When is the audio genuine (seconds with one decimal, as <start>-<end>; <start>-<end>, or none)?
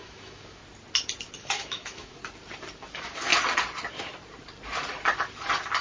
0.6-1.4; 2.2-2.8; 3.3-5.8